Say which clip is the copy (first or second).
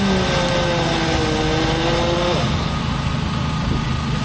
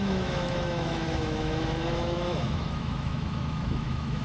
second